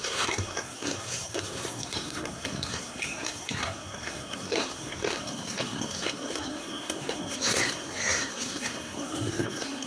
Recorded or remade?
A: remade